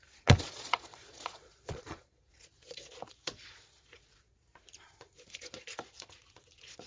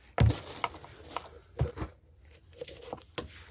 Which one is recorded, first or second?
second